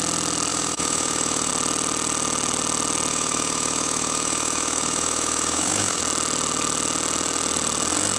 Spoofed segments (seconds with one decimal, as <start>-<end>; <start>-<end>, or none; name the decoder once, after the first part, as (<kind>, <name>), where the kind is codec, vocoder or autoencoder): 0.5-1.5 (autoencoder, DAC-VAE); 3.1-6.0